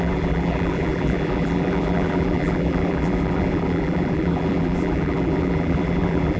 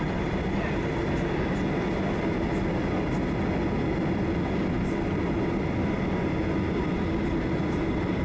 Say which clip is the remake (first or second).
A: first